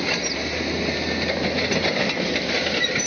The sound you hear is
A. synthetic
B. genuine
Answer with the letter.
B